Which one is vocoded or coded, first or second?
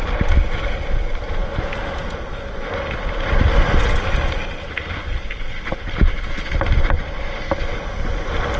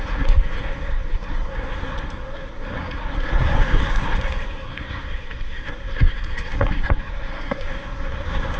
second